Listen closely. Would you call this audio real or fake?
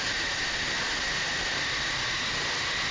real